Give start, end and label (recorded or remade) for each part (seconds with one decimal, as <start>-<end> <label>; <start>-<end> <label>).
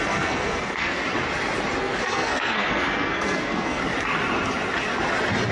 0.0-1.0 remade; 1.0-1.8 recorded; 1.8-3.8 remade; 3.8-5.5 recorded